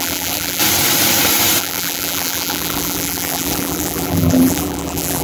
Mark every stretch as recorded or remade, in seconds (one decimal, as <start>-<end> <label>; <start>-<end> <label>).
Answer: 0.0-0.6 remade; 0.6-1.6 recorded; 1.6-5.2 remade